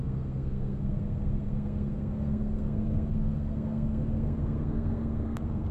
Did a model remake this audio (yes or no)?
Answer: yes